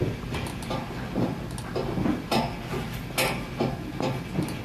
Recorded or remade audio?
recorded